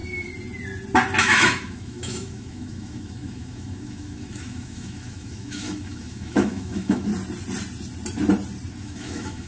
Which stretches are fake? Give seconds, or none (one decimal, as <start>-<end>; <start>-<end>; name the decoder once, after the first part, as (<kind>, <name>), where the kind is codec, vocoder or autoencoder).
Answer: 1.2-7.1 (autoencoder, DAC-VAE); 8.8-9.5